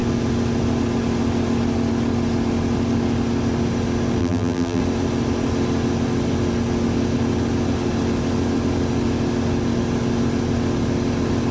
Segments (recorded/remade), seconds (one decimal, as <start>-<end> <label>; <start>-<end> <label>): 0.0-4.2 recorded; 4.2-4.8 remade; 4.8-11.5 recorded